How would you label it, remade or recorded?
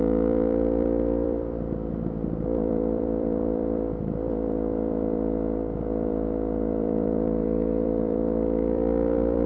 remade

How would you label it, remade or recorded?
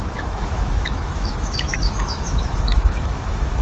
remade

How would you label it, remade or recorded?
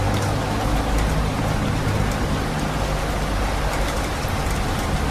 recorded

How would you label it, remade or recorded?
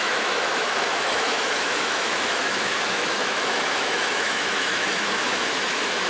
remade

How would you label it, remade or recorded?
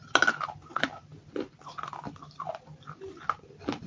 recorded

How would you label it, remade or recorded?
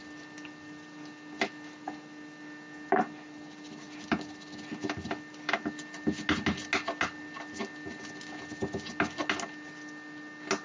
recorded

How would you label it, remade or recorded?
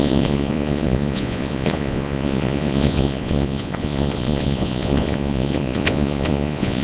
remade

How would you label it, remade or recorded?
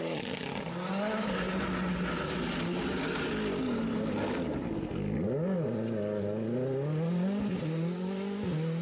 recorded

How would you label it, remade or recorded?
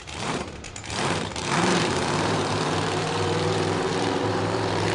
remade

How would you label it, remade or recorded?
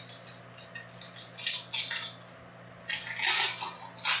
recorded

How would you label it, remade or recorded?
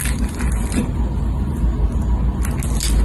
recorded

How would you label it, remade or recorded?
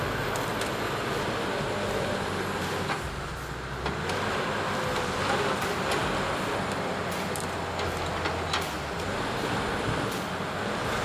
recorded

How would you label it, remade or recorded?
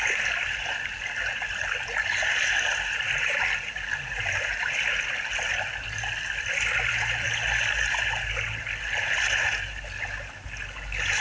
recorded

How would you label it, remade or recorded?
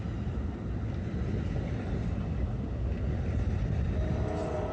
recorded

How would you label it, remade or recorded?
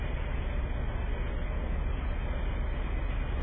recorded